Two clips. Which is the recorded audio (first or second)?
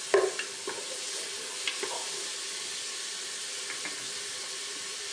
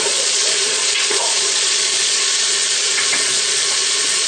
first